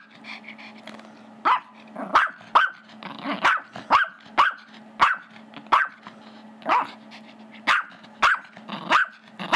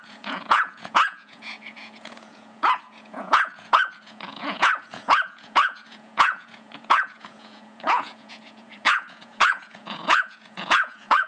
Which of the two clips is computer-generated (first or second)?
second